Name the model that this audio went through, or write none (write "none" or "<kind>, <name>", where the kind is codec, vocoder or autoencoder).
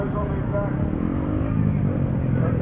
none